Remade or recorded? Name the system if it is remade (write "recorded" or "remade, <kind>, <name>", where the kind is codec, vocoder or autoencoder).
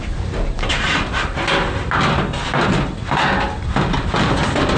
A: recorded